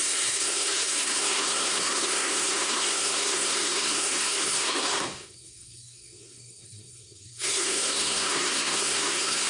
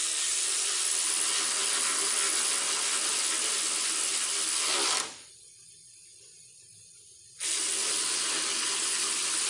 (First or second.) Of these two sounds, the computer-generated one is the first